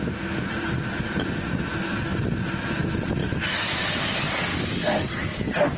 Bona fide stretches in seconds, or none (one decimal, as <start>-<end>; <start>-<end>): 0.0-3.2; 3.9-5.8